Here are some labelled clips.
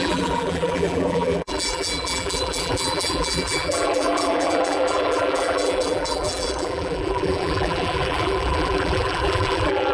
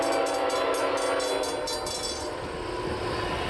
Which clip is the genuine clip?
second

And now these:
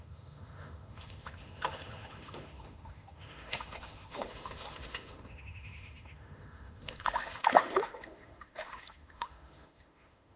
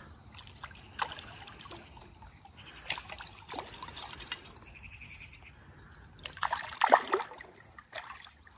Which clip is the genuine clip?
second